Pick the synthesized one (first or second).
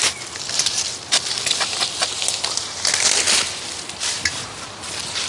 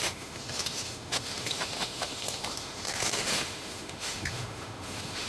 second